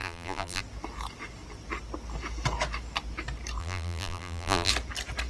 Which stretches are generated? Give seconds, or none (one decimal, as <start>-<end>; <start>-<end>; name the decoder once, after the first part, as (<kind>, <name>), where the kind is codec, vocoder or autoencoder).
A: 0.0-0.6 (vocoder, BigVGAN v2); 3.6-4.7